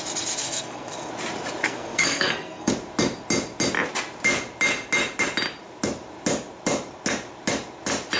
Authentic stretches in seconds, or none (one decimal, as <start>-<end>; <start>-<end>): 0.0-0.4; 1.1-1.6; 2.7-8.2